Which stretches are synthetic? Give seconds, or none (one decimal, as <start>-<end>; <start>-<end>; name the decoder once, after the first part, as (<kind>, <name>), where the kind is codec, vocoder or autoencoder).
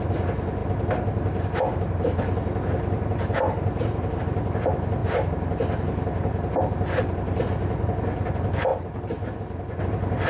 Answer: none